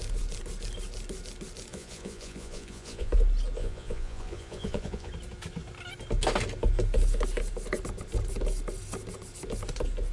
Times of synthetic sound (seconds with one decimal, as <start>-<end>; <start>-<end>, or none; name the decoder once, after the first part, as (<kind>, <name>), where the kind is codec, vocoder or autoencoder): 1.7-3.1 (vocoder, Vocos); 3.6-5.1